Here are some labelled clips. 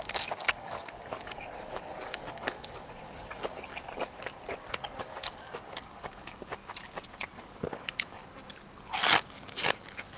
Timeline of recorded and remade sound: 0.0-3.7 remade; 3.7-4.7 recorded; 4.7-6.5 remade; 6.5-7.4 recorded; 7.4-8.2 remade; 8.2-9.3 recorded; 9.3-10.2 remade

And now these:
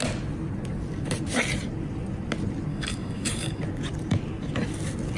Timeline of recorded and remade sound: 0.0-2.7 recorded; 2.7-3.6 remade; 3.6-5.2 recorded